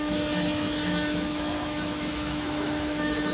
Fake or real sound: fake